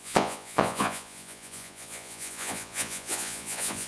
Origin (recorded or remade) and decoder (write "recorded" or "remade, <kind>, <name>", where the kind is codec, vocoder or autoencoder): remade, vocoder, Vocos